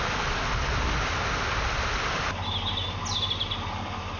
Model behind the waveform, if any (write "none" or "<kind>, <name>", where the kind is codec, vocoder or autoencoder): none